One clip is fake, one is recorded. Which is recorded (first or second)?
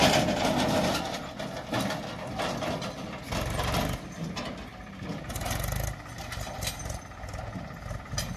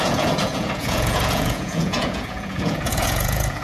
first